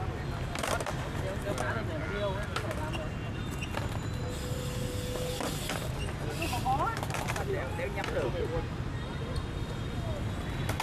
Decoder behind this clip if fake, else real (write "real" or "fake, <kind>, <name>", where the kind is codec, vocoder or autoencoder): real